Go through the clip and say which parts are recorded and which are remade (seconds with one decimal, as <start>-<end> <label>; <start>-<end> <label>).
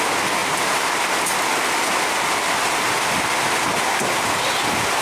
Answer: 0.0-0.4 recorded; 0.4-1.0 remade; 1.0-5.0 recorded